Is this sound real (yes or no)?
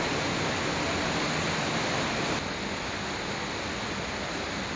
yes